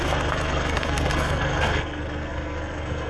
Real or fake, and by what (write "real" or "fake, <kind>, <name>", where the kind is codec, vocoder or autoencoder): fake, codec, SNAC